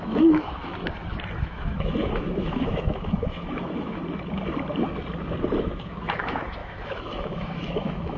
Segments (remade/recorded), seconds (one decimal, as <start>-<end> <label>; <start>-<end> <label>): 0.0-0.7 remade; 0.7-1.4 recorded; 1.4-4.0 remade; 4.0-5.6 recorded; 5.6-8.2 remade

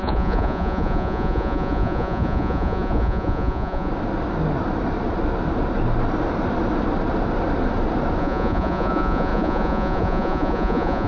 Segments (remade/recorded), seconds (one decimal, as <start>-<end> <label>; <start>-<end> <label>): 0.0-3.9 remade; 3.9-8.2 recorded; 8.2-11.1 remade

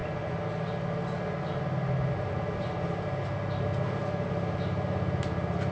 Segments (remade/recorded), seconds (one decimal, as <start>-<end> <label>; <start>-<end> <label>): 0.0-5.7 recorded

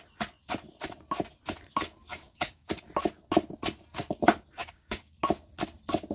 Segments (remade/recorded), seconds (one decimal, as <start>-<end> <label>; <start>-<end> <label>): 0.0-2.1 recorded; 2.1-2.7 remade; 2.7-4.6 recorded; 4.6-5.2 remade; 5.2-6.1 recorded

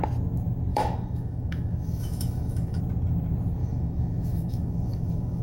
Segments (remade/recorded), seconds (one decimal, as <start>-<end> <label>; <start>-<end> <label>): 0.0-0.7 recorded; 0.7-2.8 remade; 2.8-3.6 recorded; 3.6-5.4 remade

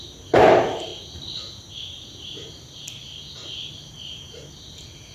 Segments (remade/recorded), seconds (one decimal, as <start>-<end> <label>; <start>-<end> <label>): 0.0-0.9 remade; 0.9-3.7 recorded; 3.7-5.1 remade

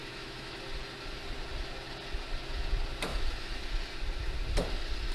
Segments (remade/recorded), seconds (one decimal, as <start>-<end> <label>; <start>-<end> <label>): 0.0-0.6 remade; 0.6-3.1 recorded; 3.1-3.7 remade; 3.7-5.1 recorded